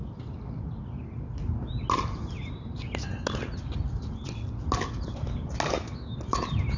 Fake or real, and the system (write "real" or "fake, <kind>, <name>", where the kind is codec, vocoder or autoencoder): real